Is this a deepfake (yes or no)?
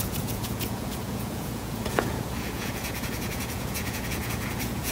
yes